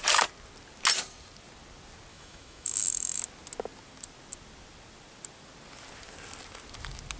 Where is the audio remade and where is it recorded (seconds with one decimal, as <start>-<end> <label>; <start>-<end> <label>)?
0.0-2.1 recorded; 2.1-3.2 remade; 3.2-7.2 recorded